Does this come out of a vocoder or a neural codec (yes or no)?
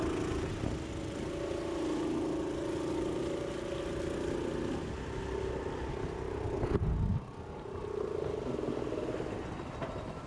no